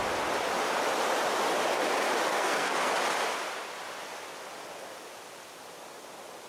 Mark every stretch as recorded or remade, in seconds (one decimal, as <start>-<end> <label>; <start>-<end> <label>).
0.0-2.3 recorded; 2.3-2.9 remade; 2.9-6.5 recorded